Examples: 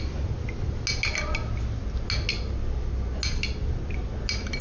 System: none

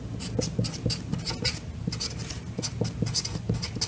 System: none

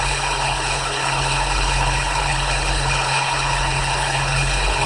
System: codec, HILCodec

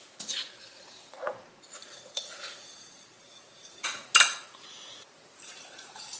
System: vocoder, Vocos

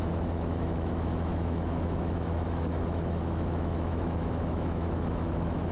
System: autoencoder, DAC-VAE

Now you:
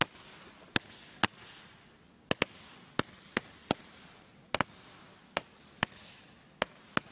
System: none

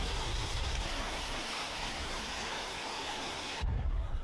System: codec, SNAC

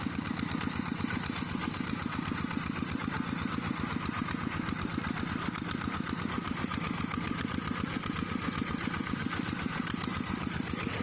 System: none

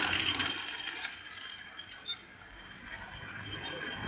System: none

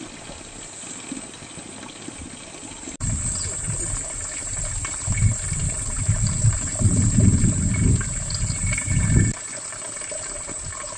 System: none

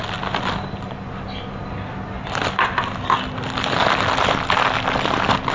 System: none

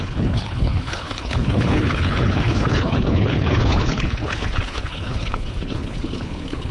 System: codec, HILCodec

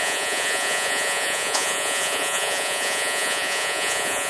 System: vocoder, Vocos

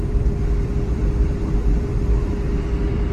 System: vocoder, BigVGAN v2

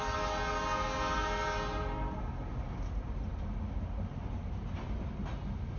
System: none